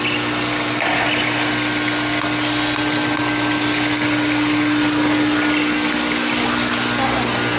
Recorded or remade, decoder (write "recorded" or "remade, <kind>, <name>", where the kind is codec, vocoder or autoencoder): recorded